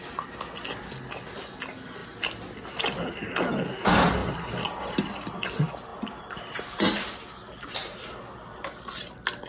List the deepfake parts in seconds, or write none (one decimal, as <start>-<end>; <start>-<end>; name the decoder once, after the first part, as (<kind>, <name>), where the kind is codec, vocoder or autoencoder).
none